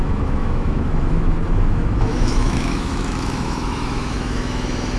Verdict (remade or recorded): remade